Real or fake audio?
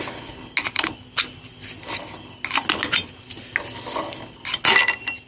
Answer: real